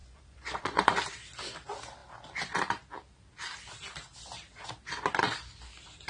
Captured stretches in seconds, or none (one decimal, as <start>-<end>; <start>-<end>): 0.9-6.1